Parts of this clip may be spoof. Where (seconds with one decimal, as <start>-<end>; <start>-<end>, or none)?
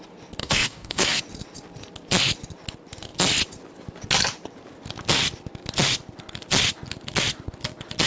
0.4-1.2